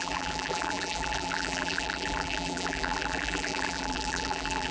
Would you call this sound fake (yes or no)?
yes